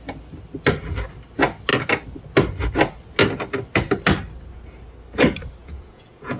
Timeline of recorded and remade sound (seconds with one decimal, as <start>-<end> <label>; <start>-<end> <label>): 0.0-5.6 recorded; 5.6-6.4 remade

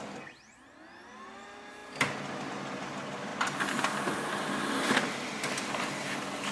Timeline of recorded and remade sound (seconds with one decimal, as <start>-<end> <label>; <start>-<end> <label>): 0.0-6.5 recorded

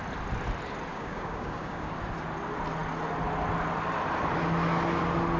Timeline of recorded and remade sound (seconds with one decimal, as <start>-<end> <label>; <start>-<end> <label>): 0.0-0.9 recorded; 0.9-1.9 remade; 1.9-5.4 recorded